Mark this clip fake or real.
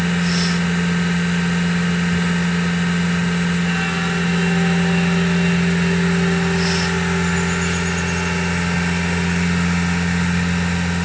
real